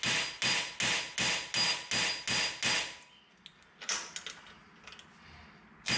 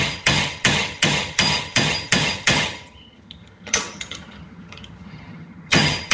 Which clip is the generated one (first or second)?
second